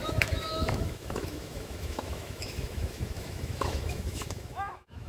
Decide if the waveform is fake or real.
fake